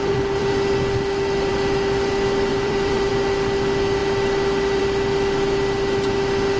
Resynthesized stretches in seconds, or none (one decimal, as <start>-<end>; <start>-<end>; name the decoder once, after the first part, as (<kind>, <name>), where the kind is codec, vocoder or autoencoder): 0.0-0.5 (vocoder, BigVGAN v2); 2.5-3.1